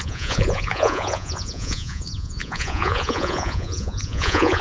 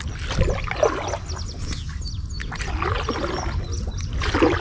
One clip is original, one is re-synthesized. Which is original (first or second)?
second